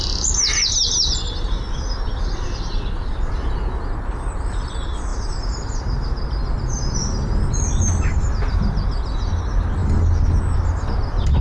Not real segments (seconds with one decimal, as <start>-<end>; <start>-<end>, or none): none